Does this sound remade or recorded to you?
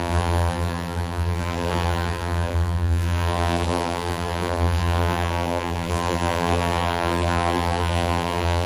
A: remade